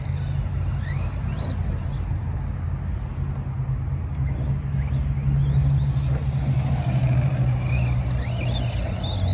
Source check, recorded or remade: recorded